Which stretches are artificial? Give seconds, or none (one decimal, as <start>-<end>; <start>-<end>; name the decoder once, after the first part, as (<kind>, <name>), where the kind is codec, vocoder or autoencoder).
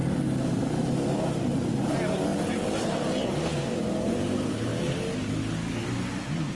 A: 0.0-2.3 (vocoder, BigVGAN v2); 3.5-4.7; 5.8-6.5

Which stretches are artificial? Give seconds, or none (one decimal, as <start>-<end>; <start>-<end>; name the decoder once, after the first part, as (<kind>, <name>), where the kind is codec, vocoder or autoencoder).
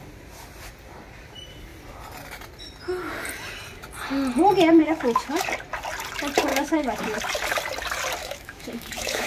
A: 4.8-5.4 (autoencoder, DAC-VAE); 6.5-7.2; 8.2-9.3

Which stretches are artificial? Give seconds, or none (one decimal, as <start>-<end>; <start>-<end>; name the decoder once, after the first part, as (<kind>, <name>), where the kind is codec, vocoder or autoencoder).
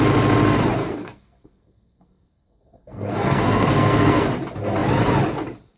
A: 0.8-4.3 (codec, SNAC)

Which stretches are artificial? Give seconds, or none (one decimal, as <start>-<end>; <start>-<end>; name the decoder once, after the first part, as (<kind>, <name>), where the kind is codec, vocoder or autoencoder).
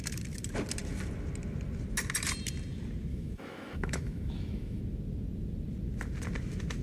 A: 3.1-4.8 (autoencoder, DAC-VAE)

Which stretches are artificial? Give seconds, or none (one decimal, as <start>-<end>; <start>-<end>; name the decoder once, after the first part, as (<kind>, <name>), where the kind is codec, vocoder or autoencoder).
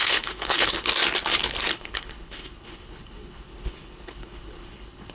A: 0.0-0.9 (codec, HILCodec); 1.7-5.1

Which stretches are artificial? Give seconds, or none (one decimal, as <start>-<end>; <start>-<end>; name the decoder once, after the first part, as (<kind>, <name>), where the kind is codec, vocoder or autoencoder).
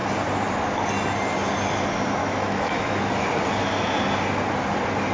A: 2.2-3.1 (autoencoder, DAC-VAE)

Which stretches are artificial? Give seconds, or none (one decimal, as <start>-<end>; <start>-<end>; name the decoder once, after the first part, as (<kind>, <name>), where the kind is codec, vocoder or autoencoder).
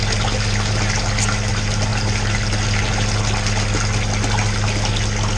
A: none